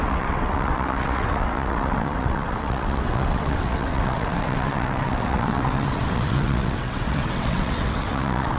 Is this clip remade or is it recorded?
remade